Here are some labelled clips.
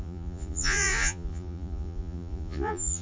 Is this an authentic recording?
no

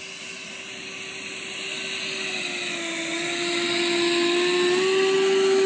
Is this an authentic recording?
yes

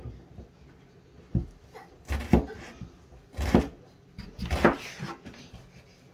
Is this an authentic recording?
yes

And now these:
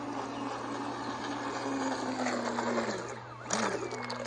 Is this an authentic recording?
yes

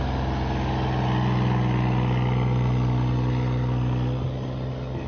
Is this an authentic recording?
yes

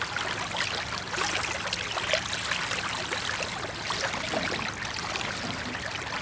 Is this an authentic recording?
yes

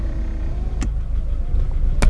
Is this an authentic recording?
yes